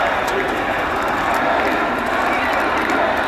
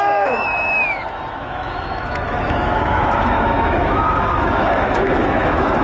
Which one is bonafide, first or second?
first